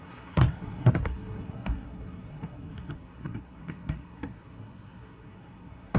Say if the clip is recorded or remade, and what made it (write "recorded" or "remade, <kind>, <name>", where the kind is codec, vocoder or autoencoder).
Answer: remade, codec, SNAC